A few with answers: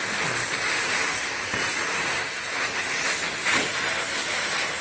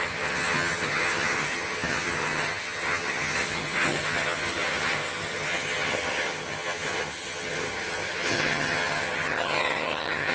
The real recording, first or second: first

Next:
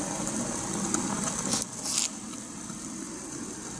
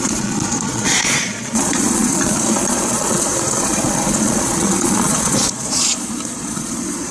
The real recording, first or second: first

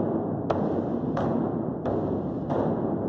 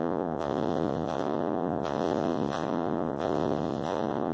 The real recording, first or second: first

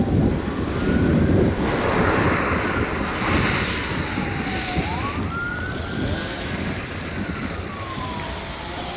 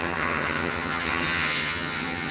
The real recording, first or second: first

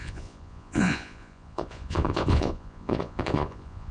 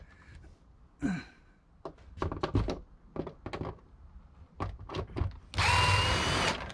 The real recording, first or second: second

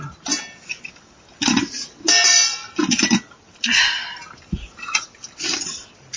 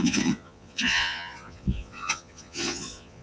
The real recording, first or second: first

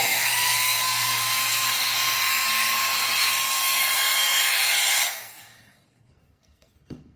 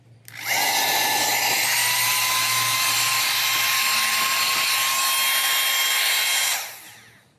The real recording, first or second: second